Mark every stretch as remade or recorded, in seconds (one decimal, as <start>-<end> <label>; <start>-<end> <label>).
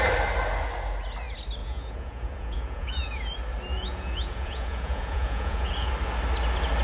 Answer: 0.0-1.6 recorded; 1.6-3.3 remade; 3.3-3.7 recorded; 3.7-5.9 remade; 5.9-6.8 recorded